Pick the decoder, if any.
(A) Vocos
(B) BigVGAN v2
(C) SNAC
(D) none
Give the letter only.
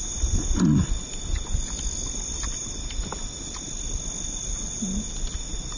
D